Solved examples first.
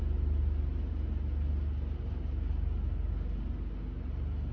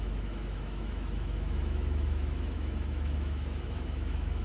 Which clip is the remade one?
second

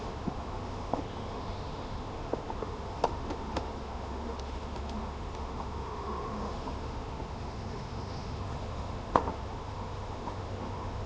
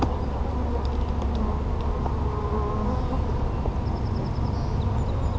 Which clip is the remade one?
first